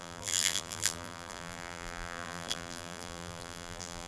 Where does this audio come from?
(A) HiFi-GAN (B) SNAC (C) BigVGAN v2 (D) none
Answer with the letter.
C